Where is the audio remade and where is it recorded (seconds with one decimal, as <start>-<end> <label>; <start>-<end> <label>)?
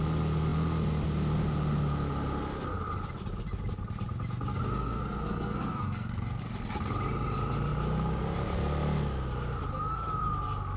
0.0-4.5 recorded; 4.5-6.4 remade; 6.4-10.8 recorded